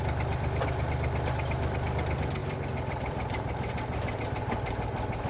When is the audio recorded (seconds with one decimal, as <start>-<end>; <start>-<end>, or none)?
0.0-2.4; 4.2-5.3